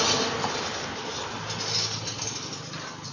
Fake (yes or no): no